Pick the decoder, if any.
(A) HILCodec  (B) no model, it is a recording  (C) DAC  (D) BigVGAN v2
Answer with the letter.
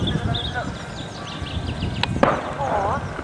B